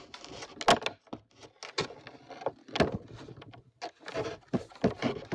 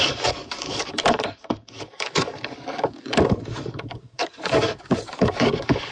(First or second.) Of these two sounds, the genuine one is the first